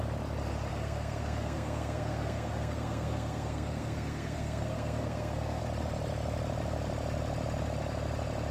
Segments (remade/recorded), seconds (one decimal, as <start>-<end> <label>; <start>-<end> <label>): 0.0-0.7 recorded; 0.7-5.6 remade; 5.6-8.5 recorded